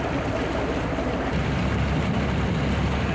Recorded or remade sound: recorded